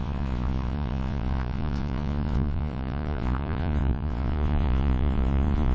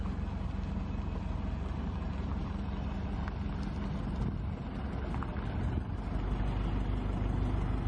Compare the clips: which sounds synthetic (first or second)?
first